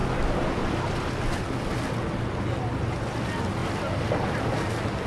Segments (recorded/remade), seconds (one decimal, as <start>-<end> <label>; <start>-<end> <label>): 0.0-5.1 recorded